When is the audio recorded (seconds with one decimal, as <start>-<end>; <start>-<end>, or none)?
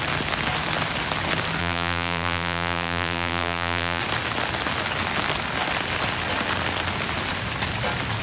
0.0-1.6; 4.0-8.2